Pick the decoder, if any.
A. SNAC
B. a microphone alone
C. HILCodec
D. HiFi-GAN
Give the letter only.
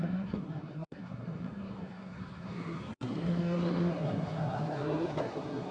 A